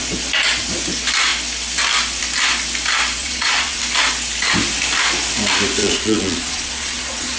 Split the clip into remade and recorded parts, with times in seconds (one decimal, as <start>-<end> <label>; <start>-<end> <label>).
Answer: 0.0-3.2 recorded; 3.2-3.8 remade; 3.8-5.8 recorded; 5.8-7.4 remade